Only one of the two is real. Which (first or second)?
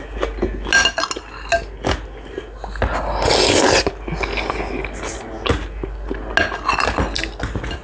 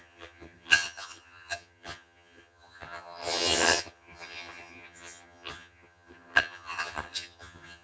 first